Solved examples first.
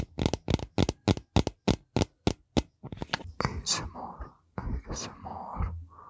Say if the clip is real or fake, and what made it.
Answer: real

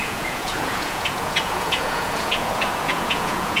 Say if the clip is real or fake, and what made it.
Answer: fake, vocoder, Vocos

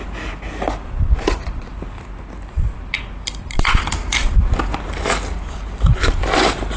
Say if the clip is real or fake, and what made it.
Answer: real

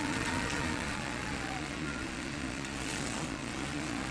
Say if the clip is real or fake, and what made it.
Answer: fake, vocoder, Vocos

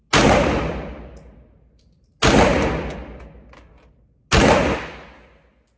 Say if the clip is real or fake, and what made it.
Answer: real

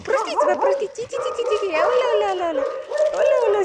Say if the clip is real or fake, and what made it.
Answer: real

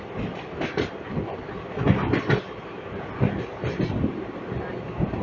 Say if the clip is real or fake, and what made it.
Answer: real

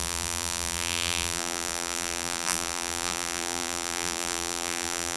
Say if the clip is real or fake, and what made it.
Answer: fake, vocoder, BigVGAN v2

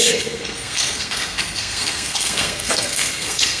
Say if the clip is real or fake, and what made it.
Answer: fake, codec, SNAC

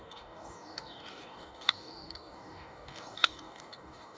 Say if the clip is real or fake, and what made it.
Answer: fake, codec, DAC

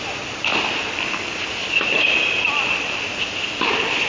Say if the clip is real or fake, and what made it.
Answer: real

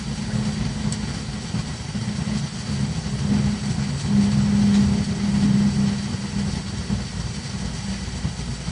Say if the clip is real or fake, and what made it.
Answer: fake, vocoder, BigVGAN v2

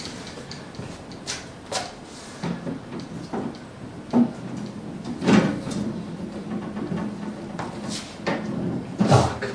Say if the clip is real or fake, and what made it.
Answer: fake, vocoder, BigVGAN v2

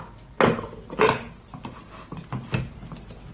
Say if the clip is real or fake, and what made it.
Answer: real